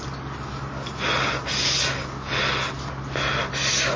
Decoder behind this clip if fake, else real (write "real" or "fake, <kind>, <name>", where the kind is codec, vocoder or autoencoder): real